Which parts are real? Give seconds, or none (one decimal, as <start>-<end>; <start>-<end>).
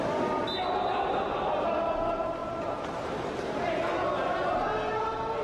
0.0-2.4; 3.7-5.4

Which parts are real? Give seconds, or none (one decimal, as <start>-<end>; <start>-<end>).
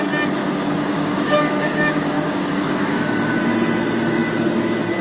0.0-0.4; 3.4-5.0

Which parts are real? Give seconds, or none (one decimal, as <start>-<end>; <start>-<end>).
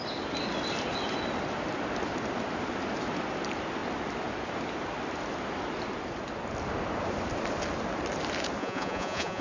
0.0-8.6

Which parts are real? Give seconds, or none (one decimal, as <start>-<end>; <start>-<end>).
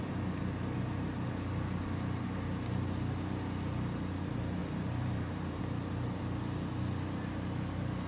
0.0-4.6; 5.6-8.1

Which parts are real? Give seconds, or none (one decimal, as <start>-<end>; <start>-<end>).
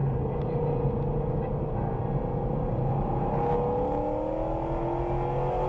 0.0-5.7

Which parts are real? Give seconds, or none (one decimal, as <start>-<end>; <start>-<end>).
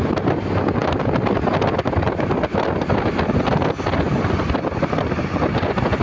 0.0-6.0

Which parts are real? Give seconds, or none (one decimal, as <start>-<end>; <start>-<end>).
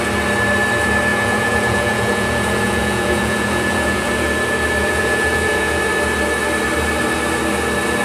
0.0-1.1; 4.1-4.8; 5.8-8.0